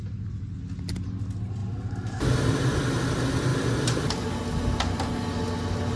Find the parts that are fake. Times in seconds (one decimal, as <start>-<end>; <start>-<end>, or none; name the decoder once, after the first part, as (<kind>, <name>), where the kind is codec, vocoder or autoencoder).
none